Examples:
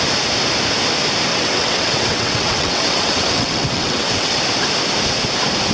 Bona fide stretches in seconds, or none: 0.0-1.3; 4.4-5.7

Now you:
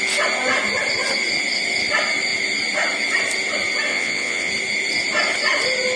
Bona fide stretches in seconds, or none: 0.0-3.9; 4.5-6.0